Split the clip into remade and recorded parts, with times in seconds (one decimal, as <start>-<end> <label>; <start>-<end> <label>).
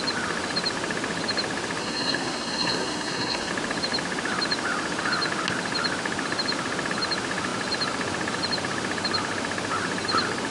0.0-1.8 recorded; 1.8-3.5 remade; 3.5-10.5 recorded